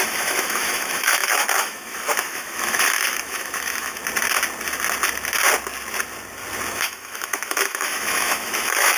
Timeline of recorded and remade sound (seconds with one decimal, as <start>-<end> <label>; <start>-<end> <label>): 0.0-4.0 remade; 4.0-6.7 recorded; 6.7-9.0 remade